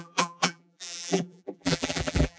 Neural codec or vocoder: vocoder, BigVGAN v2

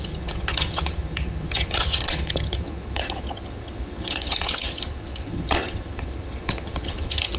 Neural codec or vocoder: vocoder, HiFi-GAN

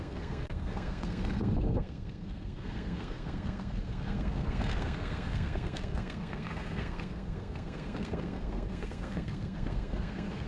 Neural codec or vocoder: codec, SNAC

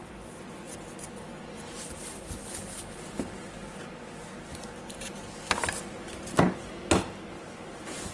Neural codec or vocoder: none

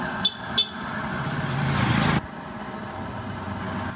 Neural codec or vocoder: none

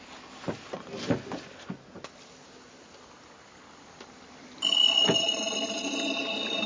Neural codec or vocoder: none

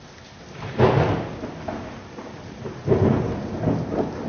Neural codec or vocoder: none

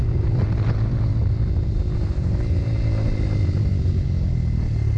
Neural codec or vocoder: none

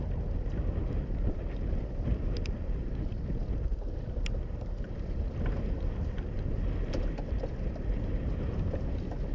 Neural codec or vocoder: none